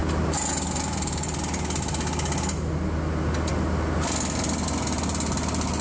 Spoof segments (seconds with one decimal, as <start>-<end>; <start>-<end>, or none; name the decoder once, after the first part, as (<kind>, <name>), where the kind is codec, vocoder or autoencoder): none